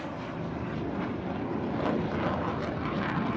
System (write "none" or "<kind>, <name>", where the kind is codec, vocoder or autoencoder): none